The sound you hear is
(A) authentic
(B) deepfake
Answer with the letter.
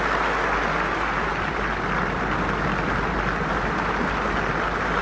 A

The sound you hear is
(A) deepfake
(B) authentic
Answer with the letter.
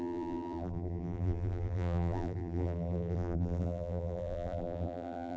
A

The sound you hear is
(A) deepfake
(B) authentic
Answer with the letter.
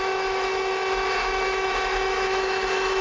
A